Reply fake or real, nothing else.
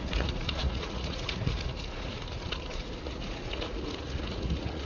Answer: fake